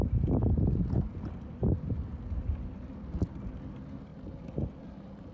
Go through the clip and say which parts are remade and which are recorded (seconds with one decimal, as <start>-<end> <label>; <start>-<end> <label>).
0.0-5.3 recorded